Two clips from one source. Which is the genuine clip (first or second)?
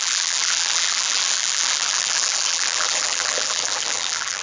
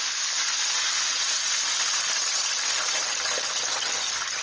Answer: second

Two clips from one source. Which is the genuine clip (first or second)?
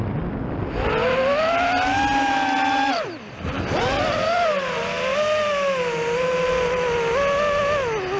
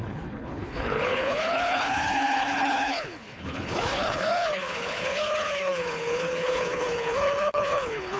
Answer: first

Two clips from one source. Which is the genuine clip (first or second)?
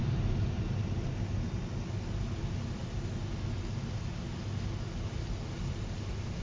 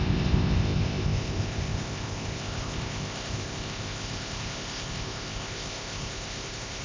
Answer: first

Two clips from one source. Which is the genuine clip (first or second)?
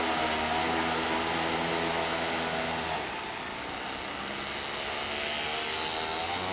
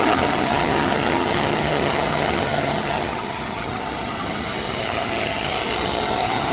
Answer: first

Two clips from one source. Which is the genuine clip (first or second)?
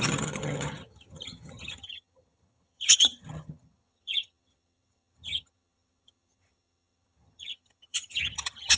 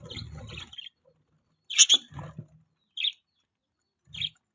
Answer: second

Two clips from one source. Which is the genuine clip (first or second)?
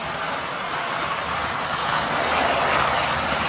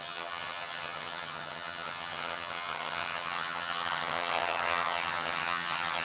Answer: first